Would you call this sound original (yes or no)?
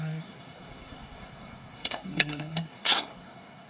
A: no